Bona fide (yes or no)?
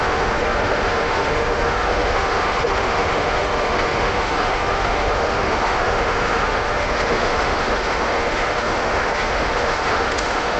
no